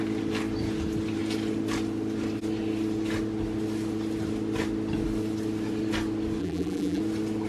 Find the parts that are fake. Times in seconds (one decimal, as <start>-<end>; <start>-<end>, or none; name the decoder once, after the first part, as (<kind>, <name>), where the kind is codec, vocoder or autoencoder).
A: 6.4-7.0 (vocoder, BigVGAN v2)